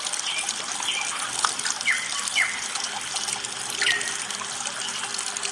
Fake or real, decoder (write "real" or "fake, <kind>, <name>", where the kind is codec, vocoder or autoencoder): real